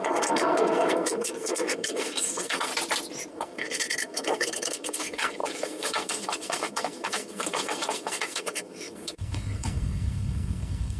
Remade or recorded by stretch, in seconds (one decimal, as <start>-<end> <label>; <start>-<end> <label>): 0.0-2.7 remade; 2.7-3.3 recorded; 3.3-11.0 remade